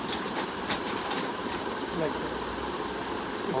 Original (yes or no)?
no